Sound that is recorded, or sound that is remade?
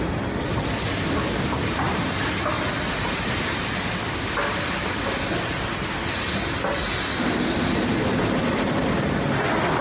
recorded